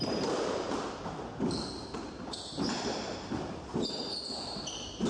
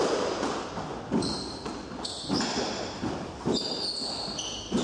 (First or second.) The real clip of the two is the second